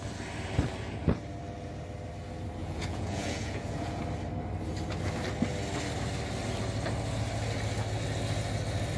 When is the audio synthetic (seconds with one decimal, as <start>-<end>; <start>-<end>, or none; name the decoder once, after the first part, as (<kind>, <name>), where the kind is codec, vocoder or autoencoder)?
2.6-4.0 (vocoder, Vocos)